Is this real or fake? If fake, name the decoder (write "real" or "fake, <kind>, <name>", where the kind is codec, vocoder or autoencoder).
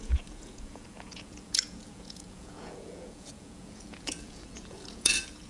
fake, vocoder, Vocos